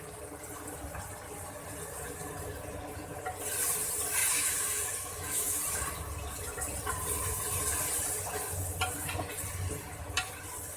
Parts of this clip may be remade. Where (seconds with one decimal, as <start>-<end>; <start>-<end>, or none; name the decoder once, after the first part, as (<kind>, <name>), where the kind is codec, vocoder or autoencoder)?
4.2-5.6 (autoencoder, DAC-VAE)

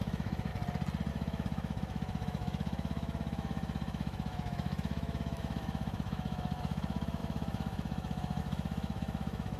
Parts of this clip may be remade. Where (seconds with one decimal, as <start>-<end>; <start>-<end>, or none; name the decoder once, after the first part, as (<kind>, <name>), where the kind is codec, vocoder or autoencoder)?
0.0-0.5 (autoencoder, DAC-VAE); 1.1-9.6

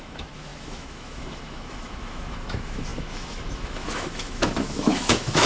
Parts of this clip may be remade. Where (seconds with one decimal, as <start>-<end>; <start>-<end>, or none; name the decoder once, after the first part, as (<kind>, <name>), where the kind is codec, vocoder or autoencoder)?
0.0-5.5 (autoencoder, DAC-VAE)

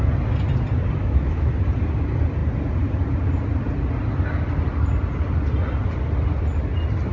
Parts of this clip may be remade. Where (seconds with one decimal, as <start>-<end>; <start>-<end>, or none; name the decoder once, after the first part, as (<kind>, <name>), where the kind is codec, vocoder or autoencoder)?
1.0-1.5 (autoencoder, DAC-VAE)

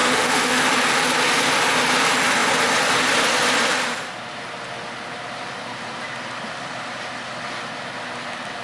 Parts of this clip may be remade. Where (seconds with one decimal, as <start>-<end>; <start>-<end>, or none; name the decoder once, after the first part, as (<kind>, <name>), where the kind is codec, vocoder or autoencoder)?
0.0-0.6 (autoencoder, DAC-VAE)

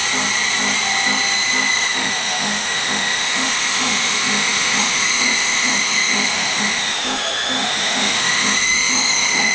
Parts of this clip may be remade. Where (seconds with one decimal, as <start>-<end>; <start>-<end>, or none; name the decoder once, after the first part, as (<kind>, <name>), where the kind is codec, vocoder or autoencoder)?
1.7-9.5 (autoencoder, DAC-VAE)

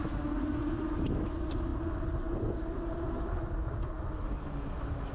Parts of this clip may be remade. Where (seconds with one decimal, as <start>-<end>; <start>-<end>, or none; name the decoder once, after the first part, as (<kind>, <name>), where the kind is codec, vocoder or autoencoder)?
none

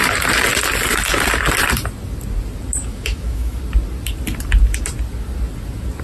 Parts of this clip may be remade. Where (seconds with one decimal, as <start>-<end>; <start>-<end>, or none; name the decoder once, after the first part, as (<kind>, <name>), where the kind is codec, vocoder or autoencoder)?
2.8-3.6 (autoencoder, DAC-VAE)